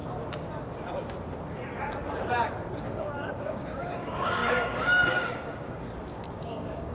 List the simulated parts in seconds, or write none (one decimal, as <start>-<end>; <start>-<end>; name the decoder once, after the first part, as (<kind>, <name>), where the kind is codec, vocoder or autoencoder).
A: 2.8-6.9 (codec, DAC)